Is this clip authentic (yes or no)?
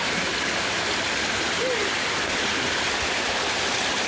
yes